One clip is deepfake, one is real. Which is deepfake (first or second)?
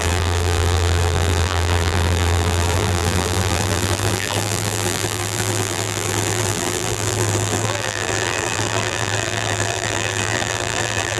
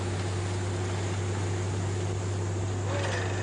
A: first